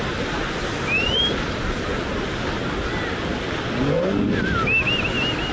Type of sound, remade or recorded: recorded